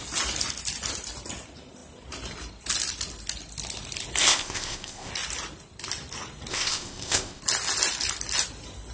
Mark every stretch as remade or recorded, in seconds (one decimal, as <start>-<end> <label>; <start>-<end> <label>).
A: 0.0-4.2 recorded; 4.2-5.1 remade; 5.1-6.5 recorded; 6.5-7.4 remade; 7.4-8.9 recorded